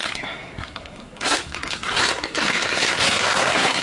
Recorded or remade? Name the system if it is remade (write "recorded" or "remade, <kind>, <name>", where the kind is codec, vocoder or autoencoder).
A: remade, codec, SNAC